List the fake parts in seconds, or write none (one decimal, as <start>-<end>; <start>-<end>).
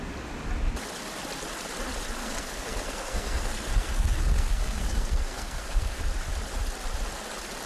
2.2-6.0